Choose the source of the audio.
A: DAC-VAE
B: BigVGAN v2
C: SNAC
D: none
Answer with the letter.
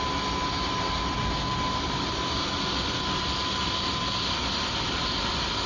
D